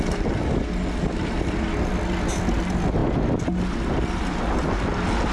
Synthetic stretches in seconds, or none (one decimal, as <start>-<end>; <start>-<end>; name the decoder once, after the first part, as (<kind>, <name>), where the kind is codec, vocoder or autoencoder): none